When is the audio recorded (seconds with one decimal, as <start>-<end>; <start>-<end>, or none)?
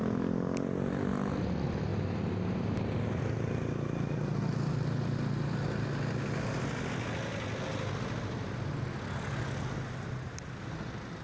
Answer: 0.0-11.2